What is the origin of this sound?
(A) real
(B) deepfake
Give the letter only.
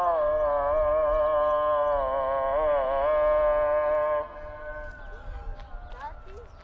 A